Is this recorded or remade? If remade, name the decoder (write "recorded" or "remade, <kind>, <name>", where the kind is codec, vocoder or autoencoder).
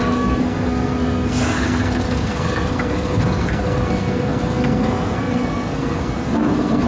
remade, codec, SNAC